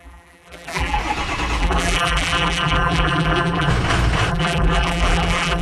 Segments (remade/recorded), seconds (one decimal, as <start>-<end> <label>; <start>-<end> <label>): 0.0-1.0 remade; 1.0-1.6 recorded; 1.6-3.7 remade; 3.7-4.3 recorded; 4.3-5.6 remade